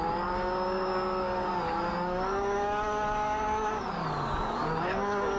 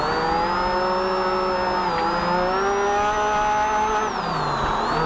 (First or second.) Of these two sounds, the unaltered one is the second